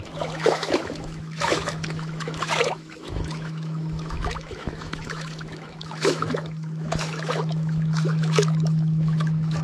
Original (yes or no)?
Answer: no